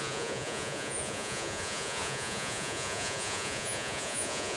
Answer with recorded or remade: remade